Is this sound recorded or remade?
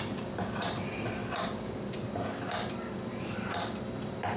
recorded